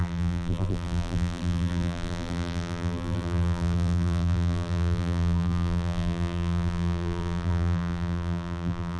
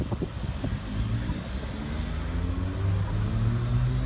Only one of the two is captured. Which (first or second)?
second